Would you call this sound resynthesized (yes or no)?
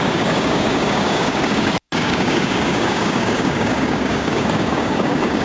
yes